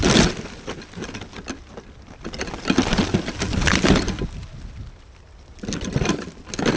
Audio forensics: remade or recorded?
recorded